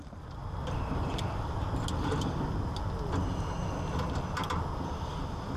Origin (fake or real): real